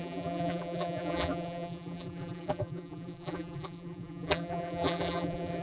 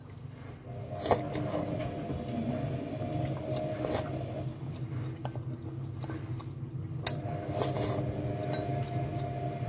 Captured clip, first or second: second